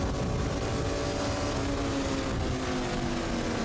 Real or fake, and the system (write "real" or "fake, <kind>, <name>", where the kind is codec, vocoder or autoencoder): real